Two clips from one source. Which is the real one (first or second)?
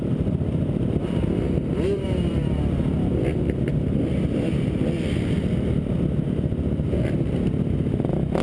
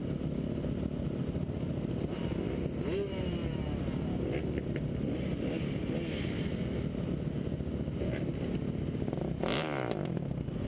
second